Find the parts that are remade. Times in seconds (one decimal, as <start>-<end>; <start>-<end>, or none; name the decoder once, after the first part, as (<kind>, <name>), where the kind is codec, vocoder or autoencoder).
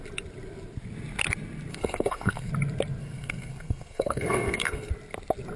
1.7-2.5 (codec, SNAC); 3.0-4.9